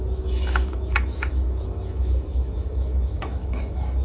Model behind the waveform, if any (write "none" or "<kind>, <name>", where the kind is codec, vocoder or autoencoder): autoencoder, DAC-VAE